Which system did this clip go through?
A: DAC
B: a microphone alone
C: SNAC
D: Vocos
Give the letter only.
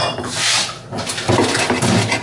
B